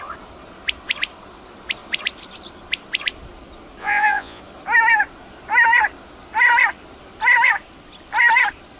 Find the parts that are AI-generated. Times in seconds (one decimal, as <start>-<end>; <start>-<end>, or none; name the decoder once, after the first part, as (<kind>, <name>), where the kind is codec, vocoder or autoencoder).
3.8-4.4 (vocoder, Vocos)